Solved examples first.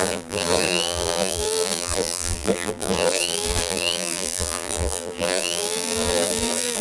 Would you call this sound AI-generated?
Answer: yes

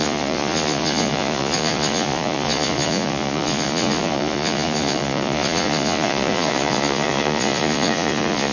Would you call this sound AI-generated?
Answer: yes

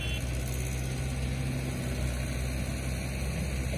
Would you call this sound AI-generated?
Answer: no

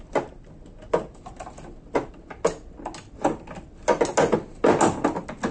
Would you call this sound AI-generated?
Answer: no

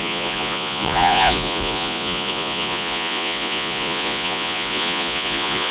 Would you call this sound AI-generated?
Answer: yes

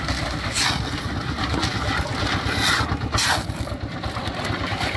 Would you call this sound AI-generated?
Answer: no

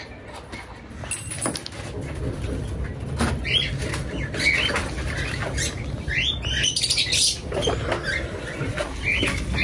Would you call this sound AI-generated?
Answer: no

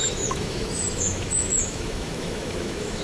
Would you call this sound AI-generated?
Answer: yes